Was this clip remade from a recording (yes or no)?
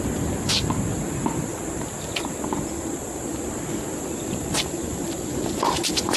no